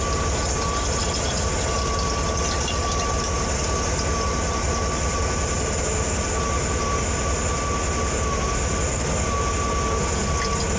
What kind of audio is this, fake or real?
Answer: real